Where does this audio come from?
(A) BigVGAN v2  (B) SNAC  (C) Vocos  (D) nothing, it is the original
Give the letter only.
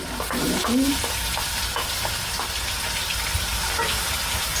D